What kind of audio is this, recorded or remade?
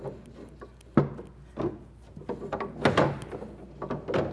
recorded